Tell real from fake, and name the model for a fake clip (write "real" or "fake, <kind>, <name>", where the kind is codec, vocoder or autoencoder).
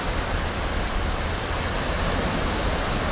real